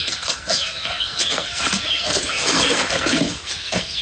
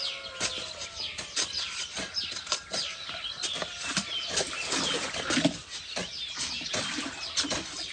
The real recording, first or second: second